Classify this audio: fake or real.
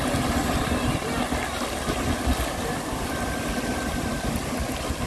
real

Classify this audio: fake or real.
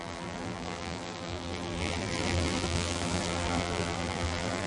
fake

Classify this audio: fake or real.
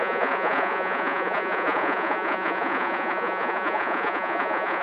fake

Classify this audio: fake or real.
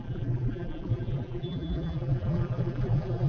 fake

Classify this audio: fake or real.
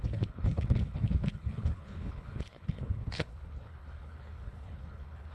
fake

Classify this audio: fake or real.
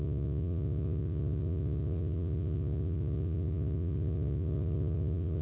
fake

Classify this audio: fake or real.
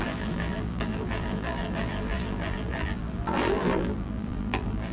fake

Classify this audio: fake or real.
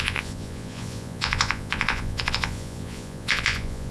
fake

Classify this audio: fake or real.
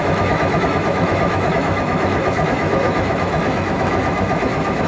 fake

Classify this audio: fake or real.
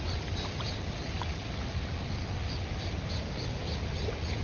real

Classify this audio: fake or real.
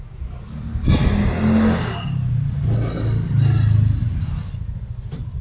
real